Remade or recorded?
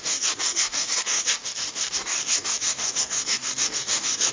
remade